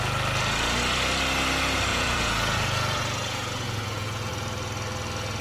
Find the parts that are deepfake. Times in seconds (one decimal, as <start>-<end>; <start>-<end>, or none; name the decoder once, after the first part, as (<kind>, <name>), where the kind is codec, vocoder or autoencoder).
1.9-4.3 (vocoder, Vocos)